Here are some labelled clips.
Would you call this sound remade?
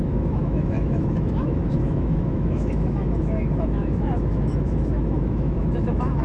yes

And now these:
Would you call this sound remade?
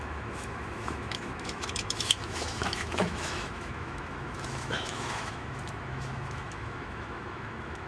yes